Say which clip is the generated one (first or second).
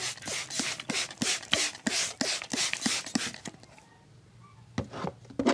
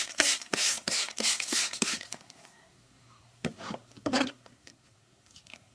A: second